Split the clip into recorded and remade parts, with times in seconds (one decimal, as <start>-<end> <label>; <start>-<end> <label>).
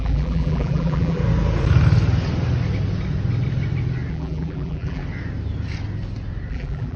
0.0-1.2 remade; 1.2-4.1 recorded; 4.1-5.0 remade; 5.0-6.5 recorded; 6.5-7.0 remade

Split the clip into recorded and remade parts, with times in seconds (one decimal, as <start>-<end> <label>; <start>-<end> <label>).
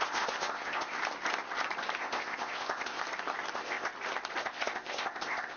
0.0-1.0 remade; 1.0-2.0 recorded; 2.0-3.0 remade; 3.0-3.5 recorded; 3.5-3.9 remade; 3.9-4.4 recorded; 4.4-5.6 remade